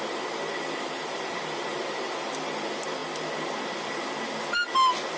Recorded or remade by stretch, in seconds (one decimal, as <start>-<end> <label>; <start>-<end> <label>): 0.0-5.2 recorded